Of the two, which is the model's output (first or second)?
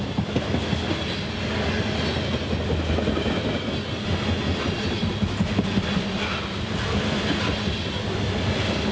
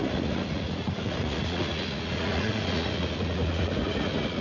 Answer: second